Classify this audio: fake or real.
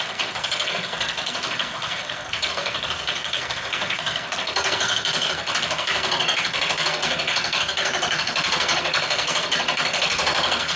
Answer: fake